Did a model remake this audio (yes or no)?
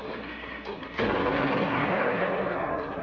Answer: yes